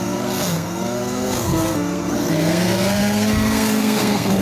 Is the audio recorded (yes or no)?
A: no